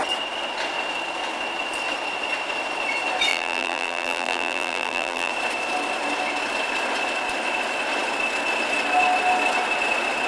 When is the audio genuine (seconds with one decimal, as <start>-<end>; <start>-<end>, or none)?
0.0-3.3; 5.3-10.3